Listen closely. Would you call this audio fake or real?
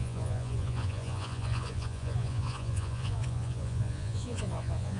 fake